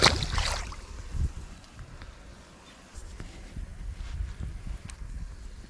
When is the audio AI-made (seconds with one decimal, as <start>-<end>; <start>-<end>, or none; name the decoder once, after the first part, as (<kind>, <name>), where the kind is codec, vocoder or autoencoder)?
1.1-1.8 (vocoder, Vocos); 2.3-3.1